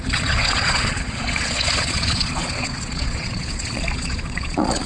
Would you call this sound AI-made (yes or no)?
yes